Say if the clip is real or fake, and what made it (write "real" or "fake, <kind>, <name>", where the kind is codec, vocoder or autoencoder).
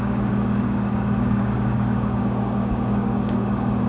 fake, codec, DAC